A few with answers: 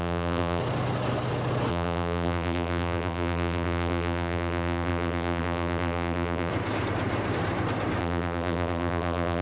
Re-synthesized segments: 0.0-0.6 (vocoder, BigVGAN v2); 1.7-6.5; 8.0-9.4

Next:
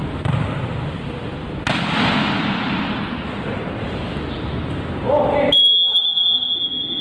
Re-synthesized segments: 2.2-4.0 (vocoder, BigVGAN v2)

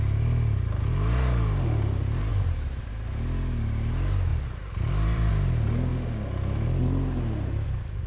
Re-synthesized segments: 2.3-2.9 (vocoder, BigVGAN v2); 4.3-5.3

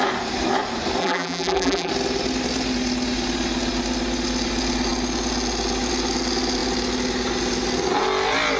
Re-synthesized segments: 1.0-1.9 (vocoder, BigVGAN v2)

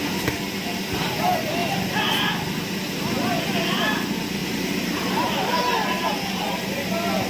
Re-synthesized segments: 4.4-6.1 (vocoder, BigVGAN v2)

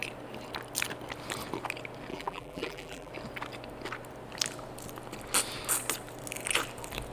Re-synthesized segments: 2.1-3.1 (vocoder, BigVGAN v2)